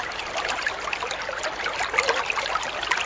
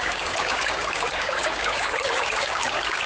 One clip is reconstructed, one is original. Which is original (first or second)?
first